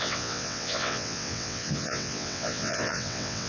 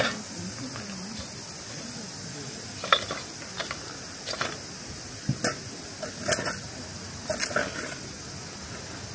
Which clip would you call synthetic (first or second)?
first